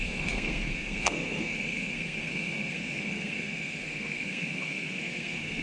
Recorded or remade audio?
remade